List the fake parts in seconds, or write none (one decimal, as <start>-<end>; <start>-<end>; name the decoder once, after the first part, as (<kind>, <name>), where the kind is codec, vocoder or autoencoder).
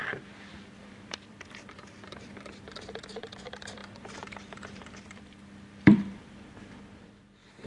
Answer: 0.8-7.7 (vocoder, BigVGAN v2)